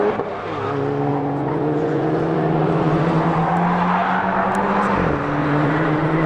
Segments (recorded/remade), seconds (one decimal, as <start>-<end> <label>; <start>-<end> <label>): 0.0-1.1 recorded; 1.1-3.5 remade; 3.5-5.4 recorded; 5.4-6.3 remade